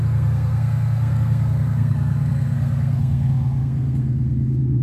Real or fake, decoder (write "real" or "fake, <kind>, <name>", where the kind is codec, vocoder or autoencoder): fake, codec, SNAC